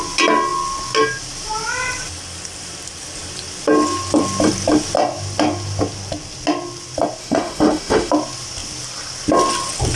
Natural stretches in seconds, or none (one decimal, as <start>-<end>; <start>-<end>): 0.0-7.2; 8.1-9.9